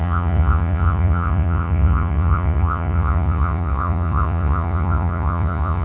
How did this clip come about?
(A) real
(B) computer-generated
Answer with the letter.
B